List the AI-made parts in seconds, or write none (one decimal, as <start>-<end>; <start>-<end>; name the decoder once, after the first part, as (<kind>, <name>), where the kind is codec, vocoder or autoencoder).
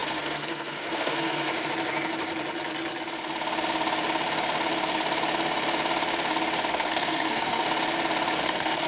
0.0-1.5 (codec, SNAC); 6.7-7.6; 8.4-8.9